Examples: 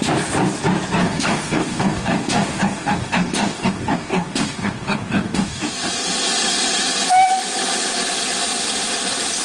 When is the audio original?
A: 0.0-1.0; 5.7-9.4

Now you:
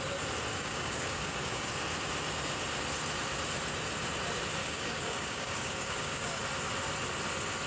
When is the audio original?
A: 0.0-0.5; 1.7-4.6; 6.4-7.7

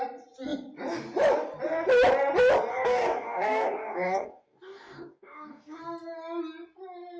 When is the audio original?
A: 0.0-2.7; 5.8-7.2

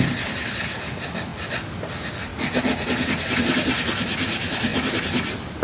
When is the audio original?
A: 0.0-5.6